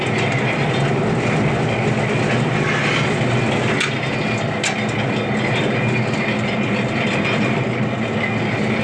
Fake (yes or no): no